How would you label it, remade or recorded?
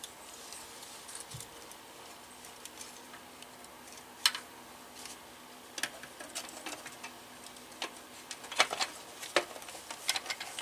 recorded